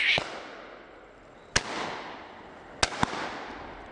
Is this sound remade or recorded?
recorded